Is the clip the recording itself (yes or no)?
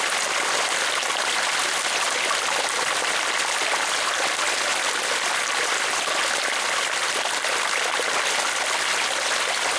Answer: yes